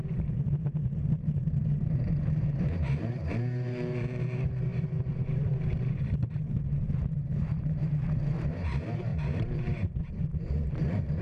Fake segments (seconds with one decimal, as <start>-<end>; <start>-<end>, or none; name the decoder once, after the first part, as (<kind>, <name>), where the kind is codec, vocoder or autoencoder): 0.0-11.2 (vocoder, BigVGAN v2)